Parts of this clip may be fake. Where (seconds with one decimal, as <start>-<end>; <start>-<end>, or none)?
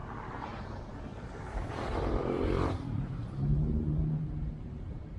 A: 0.6-5.2